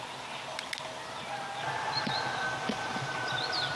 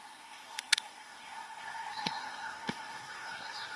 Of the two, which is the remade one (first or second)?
second